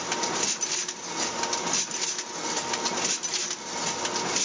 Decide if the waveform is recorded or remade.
recorded